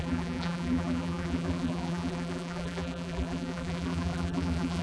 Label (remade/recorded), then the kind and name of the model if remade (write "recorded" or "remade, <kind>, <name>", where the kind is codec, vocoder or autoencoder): remade, vocoder, BigVGAN v2